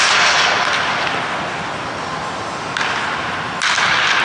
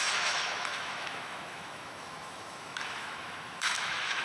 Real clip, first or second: first